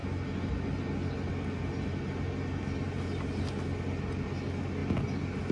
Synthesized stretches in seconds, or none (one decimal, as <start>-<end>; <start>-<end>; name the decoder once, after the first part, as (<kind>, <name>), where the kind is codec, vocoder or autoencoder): none